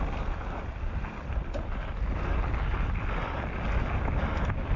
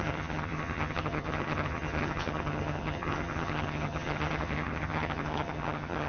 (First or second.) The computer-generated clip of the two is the second